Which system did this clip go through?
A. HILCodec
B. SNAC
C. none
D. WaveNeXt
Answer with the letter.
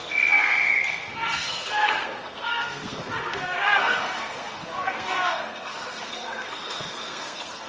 B